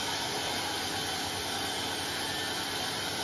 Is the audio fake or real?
real